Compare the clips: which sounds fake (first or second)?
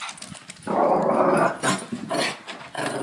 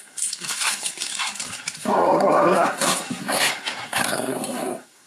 second